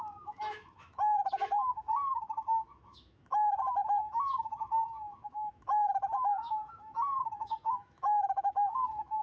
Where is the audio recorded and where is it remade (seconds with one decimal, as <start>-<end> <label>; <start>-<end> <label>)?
0.0-9.2 remade